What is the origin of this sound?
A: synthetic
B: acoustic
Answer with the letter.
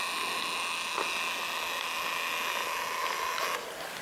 B